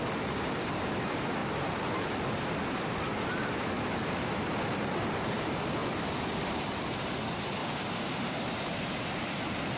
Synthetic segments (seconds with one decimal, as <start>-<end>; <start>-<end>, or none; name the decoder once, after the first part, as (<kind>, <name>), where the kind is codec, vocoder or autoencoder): 7.6-8.4 (codec, DAC)

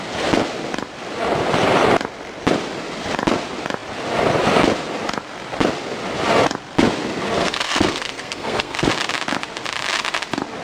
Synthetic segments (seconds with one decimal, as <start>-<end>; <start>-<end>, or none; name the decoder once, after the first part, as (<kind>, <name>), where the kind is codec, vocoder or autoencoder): 7.4-8.9 (codec, SNAC)

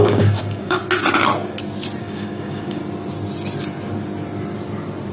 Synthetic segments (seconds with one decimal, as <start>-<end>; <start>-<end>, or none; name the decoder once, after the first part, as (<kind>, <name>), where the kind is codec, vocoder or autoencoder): 0.0-0.8 (codec, DAC); 2.0-2.8